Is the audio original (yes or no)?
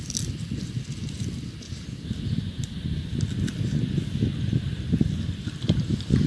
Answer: yes